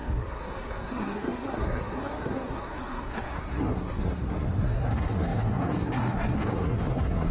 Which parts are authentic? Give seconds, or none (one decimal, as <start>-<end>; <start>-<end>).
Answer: none